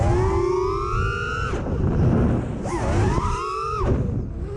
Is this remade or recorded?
recorded